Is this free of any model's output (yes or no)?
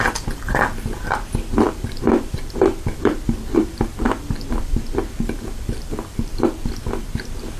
no